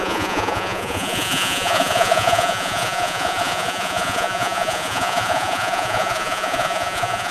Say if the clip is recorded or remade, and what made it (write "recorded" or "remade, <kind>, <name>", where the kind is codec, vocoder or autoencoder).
remade, vocoder, Vocos